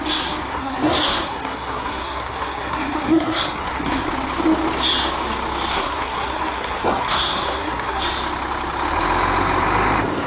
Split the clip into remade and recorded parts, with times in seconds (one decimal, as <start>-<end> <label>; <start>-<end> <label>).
0.0-0.5 recorded; 0.5-4.1 remade; 4.1-5.7 recorded; 5.7-8.0 remade; 8.0-10.3 recorded